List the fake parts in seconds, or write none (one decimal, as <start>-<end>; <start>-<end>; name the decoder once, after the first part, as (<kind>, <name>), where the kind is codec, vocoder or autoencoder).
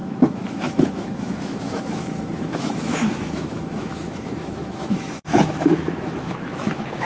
0.0-7.0 (autoencoder, DAC-VAE)